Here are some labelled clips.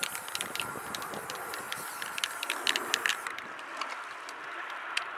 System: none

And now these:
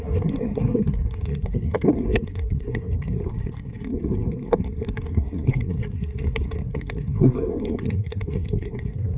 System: codec, SNAC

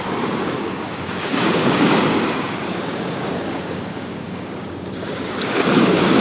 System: codec, DAC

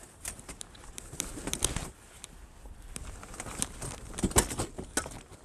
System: none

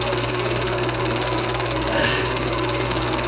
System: codec, SNAC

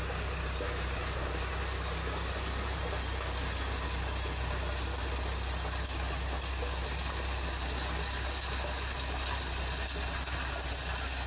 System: none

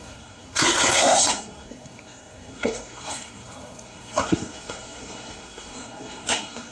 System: codec, SNAC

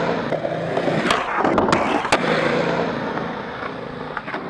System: none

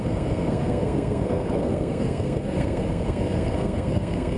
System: codec, SNAC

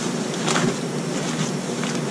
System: none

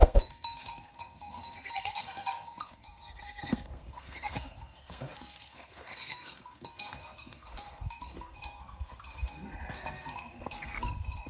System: codec, SNAC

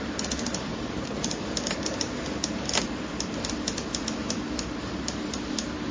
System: none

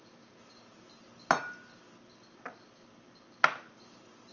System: none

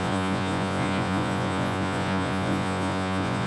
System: vocoder, Vocos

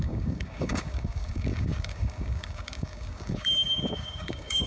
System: codec, DAC